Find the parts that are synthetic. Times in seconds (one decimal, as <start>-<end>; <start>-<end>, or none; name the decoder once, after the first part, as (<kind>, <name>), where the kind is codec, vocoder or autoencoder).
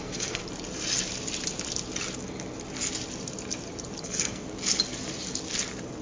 0.0-0.4 (codec, SNAC); 4.0-4.4